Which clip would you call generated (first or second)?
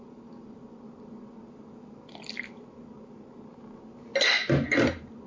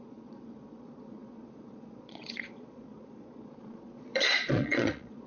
second